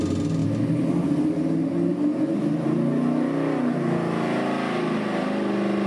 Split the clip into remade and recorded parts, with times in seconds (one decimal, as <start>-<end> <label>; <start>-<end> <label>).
0.0-5.9 recorded